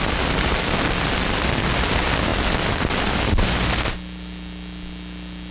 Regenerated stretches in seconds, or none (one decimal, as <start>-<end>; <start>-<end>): none